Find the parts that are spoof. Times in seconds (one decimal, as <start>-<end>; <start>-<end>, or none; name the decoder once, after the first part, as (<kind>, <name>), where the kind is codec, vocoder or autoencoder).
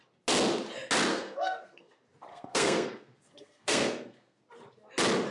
1.1-1.9 (codec, SNAC); 2.3-4.4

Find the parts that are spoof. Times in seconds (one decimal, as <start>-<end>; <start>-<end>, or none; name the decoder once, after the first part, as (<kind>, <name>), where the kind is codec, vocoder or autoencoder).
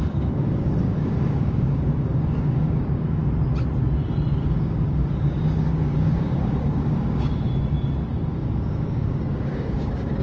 0.0-3.2 (codec, DAC); 4.3-7.5; 8.1-10.2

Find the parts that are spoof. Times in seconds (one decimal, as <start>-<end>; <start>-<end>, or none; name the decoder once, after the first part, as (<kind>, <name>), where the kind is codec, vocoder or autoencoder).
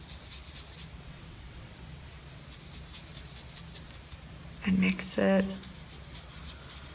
1.1-1.8 (vocoder, WaveNeXt)